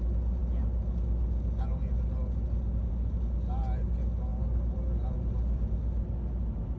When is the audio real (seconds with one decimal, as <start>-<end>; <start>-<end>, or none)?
0.0-6.8